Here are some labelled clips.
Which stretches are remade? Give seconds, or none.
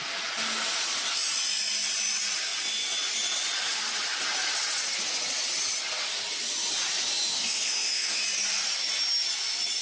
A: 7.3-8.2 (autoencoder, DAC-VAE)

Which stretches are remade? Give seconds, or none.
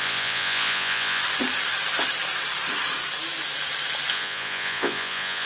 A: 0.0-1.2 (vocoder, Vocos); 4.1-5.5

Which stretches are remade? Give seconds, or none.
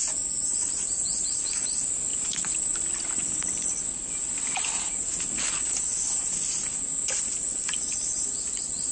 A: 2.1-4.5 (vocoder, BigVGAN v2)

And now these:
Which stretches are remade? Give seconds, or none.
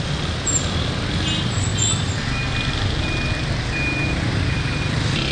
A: none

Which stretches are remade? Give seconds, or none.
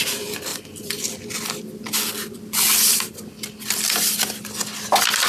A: none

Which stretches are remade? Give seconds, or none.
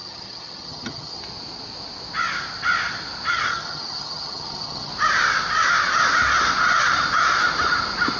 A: 0.0-1.2 (vocoder, HiFi-GAN); 3.3-4.9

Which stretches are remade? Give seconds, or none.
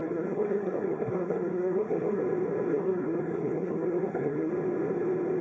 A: 0.0-2.2 (codec, SNAC); 2.7-4.5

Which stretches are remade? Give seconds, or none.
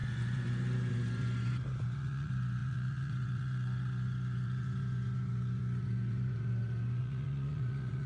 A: 0.0-8.1 (vocoder, Vocos)